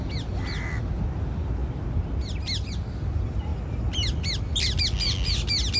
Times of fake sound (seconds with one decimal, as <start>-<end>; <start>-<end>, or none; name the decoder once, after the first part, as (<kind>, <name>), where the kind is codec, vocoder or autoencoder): none